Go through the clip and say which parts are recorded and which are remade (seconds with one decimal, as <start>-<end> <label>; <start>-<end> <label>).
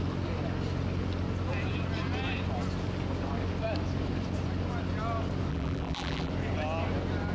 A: 0.0-5.5 recorded; 5.5-6.3 remade; 6.3-7.3 recorded